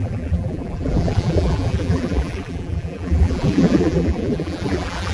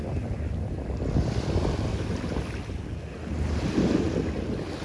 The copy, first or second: first